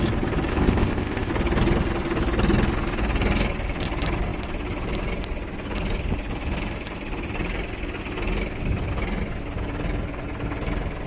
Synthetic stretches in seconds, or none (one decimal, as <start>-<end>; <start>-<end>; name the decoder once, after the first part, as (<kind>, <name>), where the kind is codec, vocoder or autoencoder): 0.5-1.3 (codec, ZipCodec)